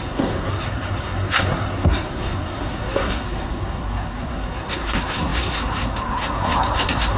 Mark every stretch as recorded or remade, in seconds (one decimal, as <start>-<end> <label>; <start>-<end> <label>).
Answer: 0.0-7.2 remade